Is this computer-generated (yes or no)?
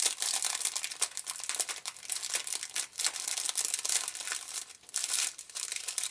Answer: no